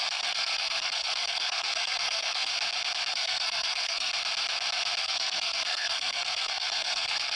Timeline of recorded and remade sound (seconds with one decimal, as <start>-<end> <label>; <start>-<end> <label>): 0.0-2.5 remade; 2.5-3.1 recorded; 3.1-4.1 remade; 4.1-5.0 recorded; 5.0-7.4 remade

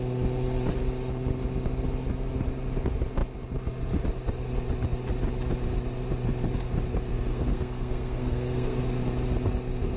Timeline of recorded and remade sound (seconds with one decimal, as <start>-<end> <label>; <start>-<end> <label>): 0.0-7.3 recorded; 7.3-8.8 remade; 8.8-10.0 recorded

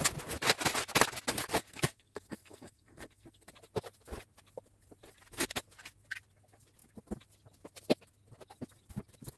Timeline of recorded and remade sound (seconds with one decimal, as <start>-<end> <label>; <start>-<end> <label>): 0.0-1.6 recorded; 1.6-3.5 remade; 3.5-9.4 recorded

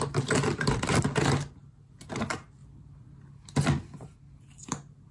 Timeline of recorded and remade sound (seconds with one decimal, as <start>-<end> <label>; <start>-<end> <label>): 0.0-5.1 recorded

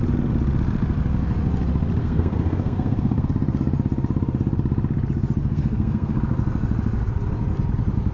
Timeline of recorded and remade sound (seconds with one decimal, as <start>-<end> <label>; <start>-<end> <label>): 0.0-2.0 recorded; 2.0-3.3 remade; 3.3-5.4 recorded; 5.4-6.2 remade; 6.2-8.1 recorded